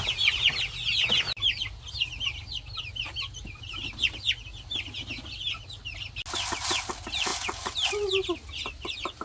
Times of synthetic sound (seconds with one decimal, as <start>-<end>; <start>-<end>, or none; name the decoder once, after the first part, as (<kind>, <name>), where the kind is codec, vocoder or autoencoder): none